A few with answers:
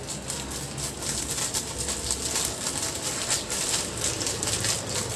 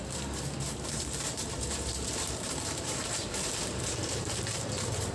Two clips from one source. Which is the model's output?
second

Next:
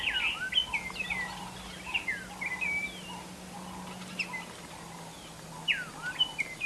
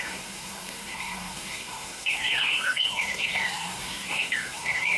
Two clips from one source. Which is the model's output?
second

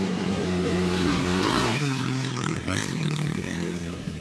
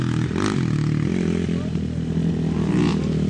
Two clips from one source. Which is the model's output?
first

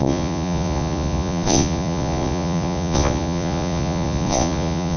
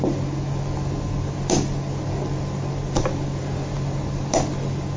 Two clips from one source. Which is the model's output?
first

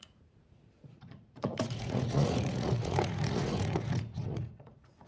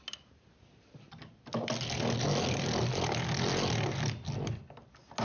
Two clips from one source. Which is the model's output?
first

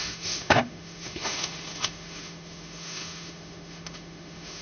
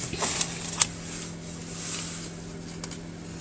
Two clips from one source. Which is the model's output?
first